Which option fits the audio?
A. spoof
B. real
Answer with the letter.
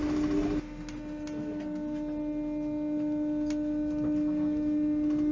B